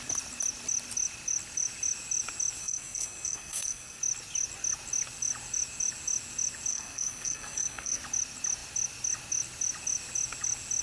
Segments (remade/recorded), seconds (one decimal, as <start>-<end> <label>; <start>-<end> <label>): 0.0-2.6 recorded; 2.6-4.0 remade; 4.0-6.7 recorded; 6.7-8.0 remade; 8.0-10.8 recorded